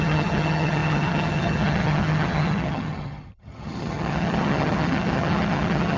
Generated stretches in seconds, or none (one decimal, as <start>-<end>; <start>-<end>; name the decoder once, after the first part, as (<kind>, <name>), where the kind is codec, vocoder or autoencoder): 0.0-6.0 (vocoder, HiFi-GAN)